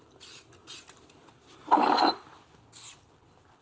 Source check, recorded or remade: recorded